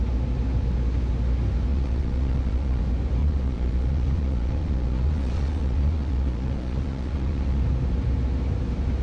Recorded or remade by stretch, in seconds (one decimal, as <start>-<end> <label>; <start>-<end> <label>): 0.0-1.7 recorded; 1.7-2.8 remade; 2.8-3.2 recorded; 3.2-7.6 remade; 7.6-9.0 recorded

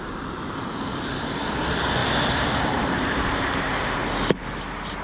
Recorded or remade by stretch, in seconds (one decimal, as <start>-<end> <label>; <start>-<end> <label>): 0.0-0.9 recorded; 0.9-1.6 remade; 1.6-2.0 recorded; 2.0-3.7 remade; 3.7-5.0 recorded